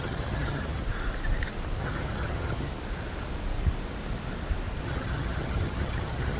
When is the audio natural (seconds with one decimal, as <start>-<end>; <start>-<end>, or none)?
0.8-1.8; 2.7-4.8